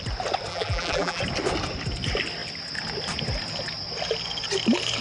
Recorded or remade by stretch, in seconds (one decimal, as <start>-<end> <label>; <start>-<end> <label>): 0.0-0.5 recorded; 0.5-1.2 remade; 1.2-5.0 recorded